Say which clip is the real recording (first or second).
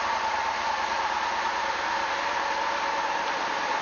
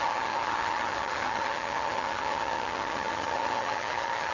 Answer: first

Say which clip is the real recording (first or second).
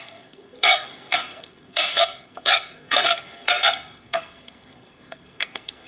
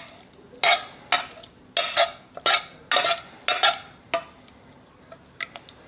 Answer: second